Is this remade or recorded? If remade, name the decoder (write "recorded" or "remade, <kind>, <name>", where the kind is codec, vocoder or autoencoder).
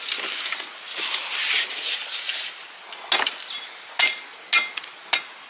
recorded